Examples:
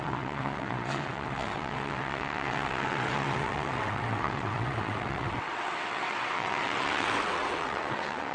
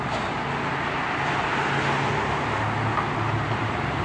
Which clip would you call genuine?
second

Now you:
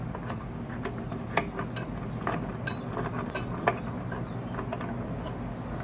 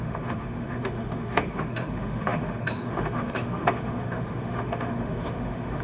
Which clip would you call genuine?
first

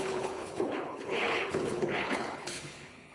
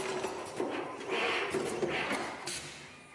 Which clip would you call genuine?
second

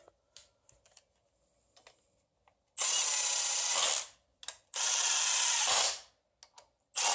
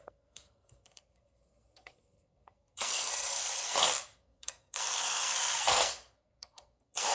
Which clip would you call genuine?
first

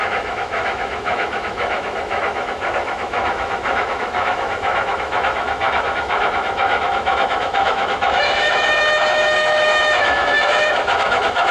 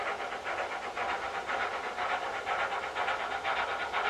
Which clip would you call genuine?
second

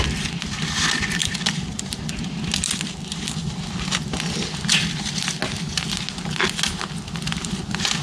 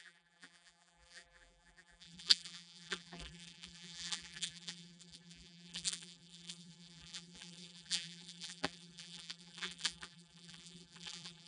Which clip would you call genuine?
first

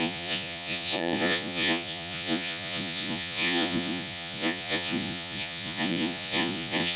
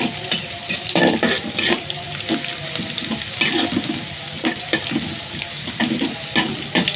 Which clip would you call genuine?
second